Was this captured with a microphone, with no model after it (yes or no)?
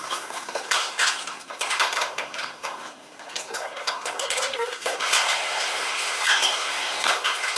no